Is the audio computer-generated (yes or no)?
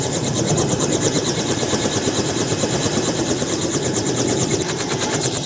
yes